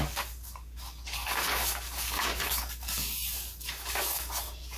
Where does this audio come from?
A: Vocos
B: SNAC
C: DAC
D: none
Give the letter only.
C